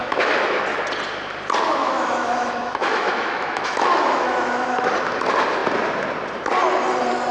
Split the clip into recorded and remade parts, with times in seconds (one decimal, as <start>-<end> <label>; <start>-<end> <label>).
0.0-0.6 remade; 0.6-1.8 recorded; 1.8-4.9 remade; 4.9-7.3 recorded